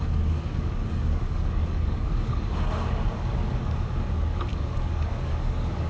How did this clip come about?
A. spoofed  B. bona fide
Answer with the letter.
A